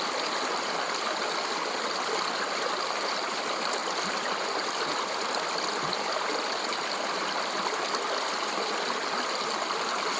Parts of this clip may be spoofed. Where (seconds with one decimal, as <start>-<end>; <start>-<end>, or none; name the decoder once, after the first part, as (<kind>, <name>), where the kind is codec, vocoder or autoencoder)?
none

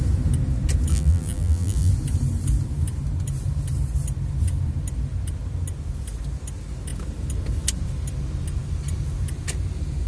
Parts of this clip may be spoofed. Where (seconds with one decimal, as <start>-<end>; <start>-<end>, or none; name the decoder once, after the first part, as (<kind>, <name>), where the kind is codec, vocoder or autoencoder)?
0.9-1.9 (vocoder, BigVGAN v2)

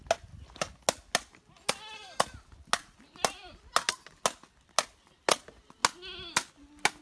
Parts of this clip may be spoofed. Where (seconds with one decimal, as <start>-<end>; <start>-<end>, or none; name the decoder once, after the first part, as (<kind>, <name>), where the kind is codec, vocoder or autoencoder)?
none